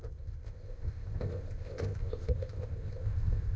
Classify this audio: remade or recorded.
remade